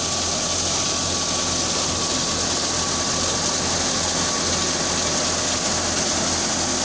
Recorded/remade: recorded